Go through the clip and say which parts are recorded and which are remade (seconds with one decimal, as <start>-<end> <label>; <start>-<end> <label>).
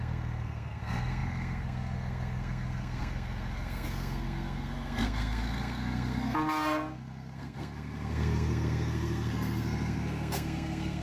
0.0-11.0 remade